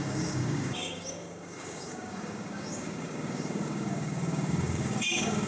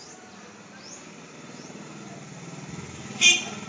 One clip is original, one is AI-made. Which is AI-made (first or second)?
first